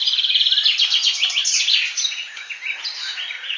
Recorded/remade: remade